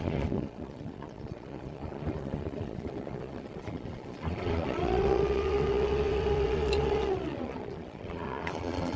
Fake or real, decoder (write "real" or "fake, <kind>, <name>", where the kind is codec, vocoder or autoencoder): fake, vocoder, Vocos